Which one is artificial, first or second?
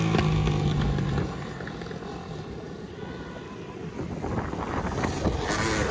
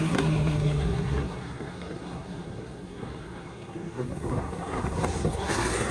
second